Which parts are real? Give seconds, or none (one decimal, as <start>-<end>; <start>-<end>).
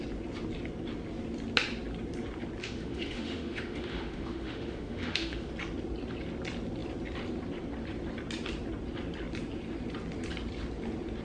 0.0-2.6; 5.5-11.2